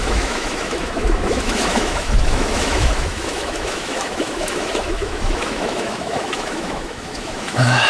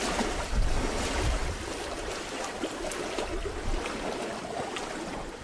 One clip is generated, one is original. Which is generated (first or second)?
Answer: first